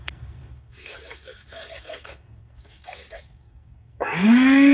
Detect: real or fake fake